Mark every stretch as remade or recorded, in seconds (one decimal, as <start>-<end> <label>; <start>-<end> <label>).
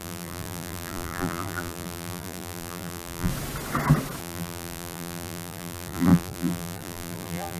0.0-3.3 remade; 3.3-4.2 recorded; 4.2-7.6 remade